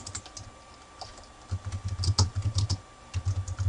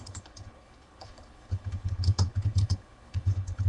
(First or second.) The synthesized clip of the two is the second